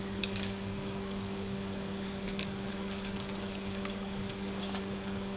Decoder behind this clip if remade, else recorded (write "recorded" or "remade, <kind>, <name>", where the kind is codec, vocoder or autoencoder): remade, codec, DAC